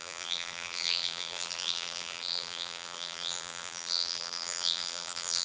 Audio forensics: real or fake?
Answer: fake